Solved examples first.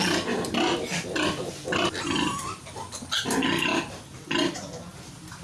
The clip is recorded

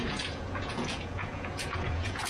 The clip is remade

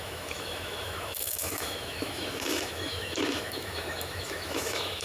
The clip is remade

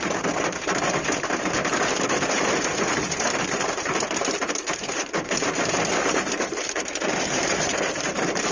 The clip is remade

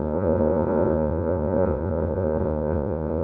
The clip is remade